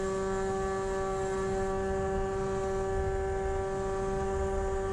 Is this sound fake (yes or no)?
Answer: no